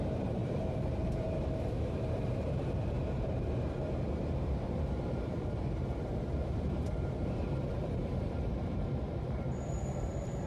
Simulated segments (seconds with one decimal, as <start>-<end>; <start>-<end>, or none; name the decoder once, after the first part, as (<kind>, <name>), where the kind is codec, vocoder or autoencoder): 0.0-10.5 (vocoder, BigVGAN v2)